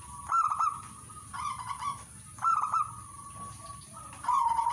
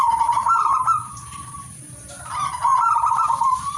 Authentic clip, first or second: first